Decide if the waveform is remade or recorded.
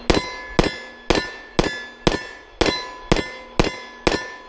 recorded